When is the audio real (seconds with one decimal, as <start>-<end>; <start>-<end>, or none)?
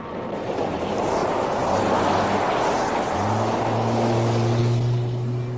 0.0-5.6